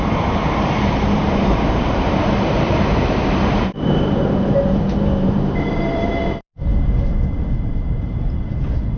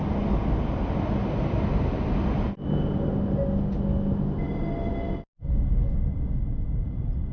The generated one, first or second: first